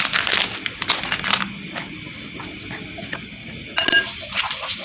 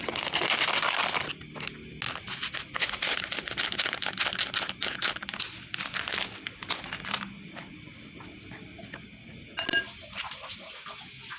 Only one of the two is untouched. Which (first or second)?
second